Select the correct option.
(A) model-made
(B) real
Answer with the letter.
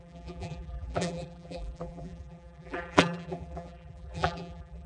A